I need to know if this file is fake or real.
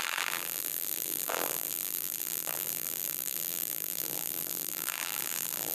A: fake